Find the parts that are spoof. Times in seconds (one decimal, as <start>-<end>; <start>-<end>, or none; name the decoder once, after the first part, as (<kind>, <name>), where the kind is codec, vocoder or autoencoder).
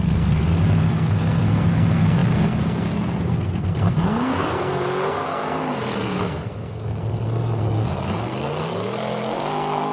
0.0-9.9 (codec, SNAC)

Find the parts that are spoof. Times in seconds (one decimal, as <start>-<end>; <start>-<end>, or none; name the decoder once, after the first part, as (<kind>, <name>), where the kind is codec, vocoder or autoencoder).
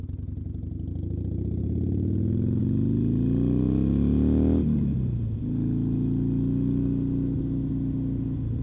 none